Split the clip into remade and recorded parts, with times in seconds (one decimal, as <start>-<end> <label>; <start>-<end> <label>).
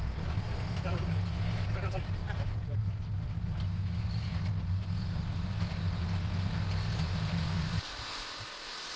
0.0-9.0 recorded